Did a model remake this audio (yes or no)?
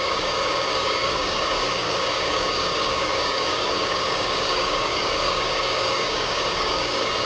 yes